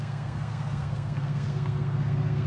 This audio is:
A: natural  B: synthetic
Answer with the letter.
B